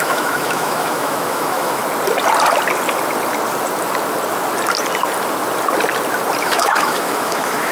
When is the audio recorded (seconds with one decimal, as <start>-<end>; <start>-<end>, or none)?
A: 1.8-6.4